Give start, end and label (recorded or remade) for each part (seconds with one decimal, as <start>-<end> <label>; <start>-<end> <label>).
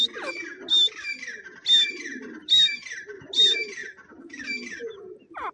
0.0-5.5 recorded